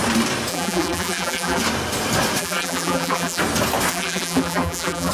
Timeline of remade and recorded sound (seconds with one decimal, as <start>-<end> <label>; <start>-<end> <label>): 0.0-0.5 recorded; 0.5-1.6 remade; 1.6-2.4 recorded; 2.4-3.4 remade; 3.4-3.9 recorded; 3.9-5.1 remade